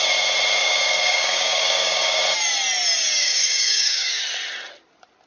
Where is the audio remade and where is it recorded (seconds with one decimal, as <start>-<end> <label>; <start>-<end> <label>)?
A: 0.0-0.6 recorded; 0.6-2.2 remade; 2.2-3.2 recorded; 3.2-4.2 remade; 4.2-5.3 recorded

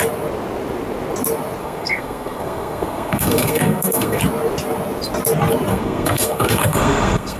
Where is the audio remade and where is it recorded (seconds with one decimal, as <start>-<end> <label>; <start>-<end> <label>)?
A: 0.0-1.6 recorded; 1.6-4.2 remade; 4.2-5.7 recorded; 5.7-7.4 remade

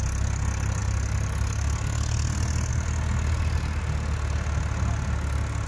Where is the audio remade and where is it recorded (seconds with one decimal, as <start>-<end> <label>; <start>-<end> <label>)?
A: 0.0-5.7 recorded

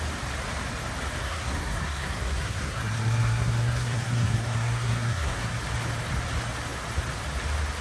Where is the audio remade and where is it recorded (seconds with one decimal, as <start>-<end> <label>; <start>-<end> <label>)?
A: 0.0-1.2 recorded; 1.2-5.5 remade; 5.5-7.8 recorded

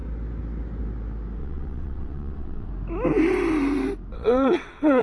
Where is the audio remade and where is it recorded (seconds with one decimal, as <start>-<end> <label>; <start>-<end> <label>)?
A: 0.0-1.4 recorded; 1.4-2.7 remade; 2.7-4.1 recorded; 4.1-5.0 remade

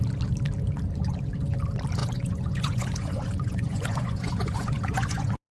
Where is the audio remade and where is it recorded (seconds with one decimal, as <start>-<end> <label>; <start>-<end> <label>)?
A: 0.0-2.0 recorded; 2.0-5.6 remade

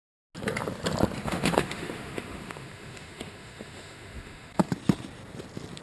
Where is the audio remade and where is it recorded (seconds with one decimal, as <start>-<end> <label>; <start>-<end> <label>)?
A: 0.0-1.2 recorded; 1.2-4.7 remade; 4.7-5.8 recorded

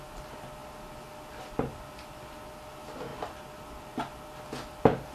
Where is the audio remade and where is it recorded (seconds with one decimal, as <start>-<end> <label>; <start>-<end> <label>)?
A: 0.0-5.1 recorded